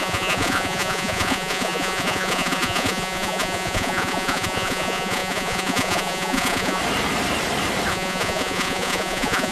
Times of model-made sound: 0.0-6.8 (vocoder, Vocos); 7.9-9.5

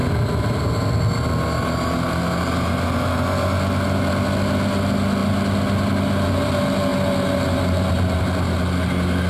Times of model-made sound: none